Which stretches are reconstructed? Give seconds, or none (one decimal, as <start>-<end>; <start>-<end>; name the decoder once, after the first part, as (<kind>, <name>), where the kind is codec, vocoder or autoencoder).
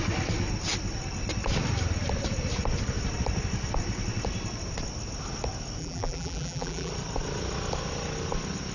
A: 5.8-6.9 (vocoder, BigVGAN v2)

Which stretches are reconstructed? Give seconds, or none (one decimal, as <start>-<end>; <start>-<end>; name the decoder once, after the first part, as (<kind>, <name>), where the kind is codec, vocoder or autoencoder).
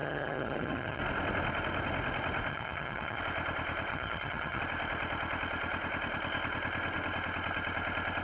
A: 0.0-1.0 (vocoder, HiFi-GAN); 2.5-3.2; 3.9-4.6